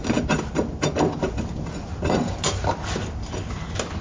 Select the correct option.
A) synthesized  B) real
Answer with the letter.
B